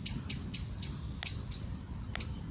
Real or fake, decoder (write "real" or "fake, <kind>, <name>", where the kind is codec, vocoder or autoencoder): real